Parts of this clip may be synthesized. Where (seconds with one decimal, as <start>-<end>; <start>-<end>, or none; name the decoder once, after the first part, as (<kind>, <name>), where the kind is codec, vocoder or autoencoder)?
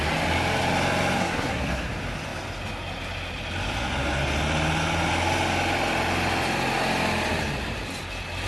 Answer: 1.2-1.9 (codec, SNAC)